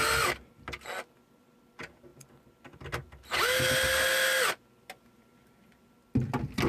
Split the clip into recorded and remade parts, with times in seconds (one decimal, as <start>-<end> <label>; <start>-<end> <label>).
0.0-6.7 recorded